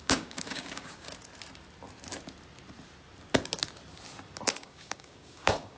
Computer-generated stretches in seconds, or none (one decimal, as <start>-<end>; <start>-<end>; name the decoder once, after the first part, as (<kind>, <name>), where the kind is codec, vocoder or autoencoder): 0.0-1.1 (codec, DAC); 4.5-5.8